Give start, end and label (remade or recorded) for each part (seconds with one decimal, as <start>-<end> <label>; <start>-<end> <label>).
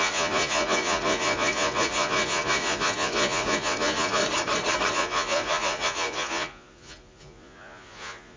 0.0-4.2 remade; 4.2-4.9 recorded; 4.9-8.4 remade